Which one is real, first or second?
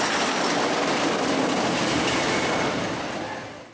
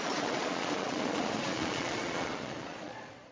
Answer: first